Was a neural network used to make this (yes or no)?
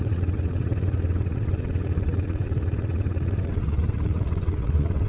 yes